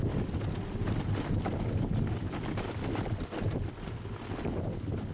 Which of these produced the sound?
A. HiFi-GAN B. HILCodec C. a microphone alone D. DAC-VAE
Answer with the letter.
C